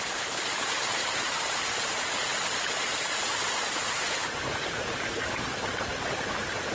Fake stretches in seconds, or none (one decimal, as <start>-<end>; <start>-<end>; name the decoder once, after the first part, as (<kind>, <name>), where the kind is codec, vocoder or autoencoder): 1.0-1.5 (vocoder, BigVGAN v2); 2.3-5.4